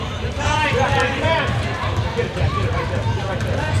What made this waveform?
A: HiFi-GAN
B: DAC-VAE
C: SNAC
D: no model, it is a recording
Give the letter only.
D